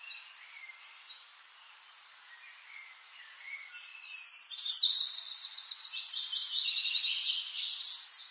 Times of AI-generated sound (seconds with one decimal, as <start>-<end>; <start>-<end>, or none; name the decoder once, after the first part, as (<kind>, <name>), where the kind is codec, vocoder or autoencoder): 0.0-3.9 (vocoder, BigVGAN v2); 4.5-7.0